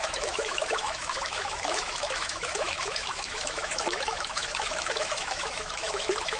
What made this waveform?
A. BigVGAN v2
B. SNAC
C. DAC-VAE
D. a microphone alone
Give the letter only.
C